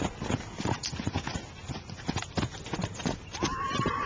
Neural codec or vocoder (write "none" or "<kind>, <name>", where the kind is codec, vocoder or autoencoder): none